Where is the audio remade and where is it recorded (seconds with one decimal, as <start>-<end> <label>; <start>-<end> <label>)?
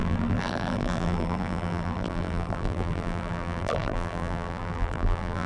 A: 0.0-5.5 remade